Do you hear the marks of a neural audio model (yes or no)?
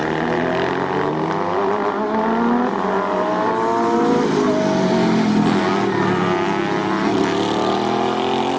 no